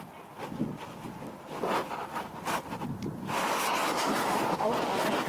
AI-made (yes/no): no